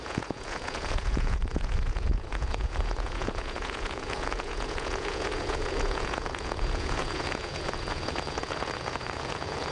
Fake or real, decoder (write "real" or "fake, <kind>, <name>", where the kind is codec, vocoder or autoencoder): fake, vocoder, Vocos